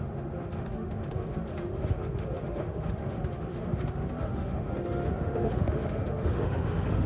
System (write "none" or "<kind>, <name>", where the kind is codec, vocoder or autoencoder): autoencoder, DAC-VAE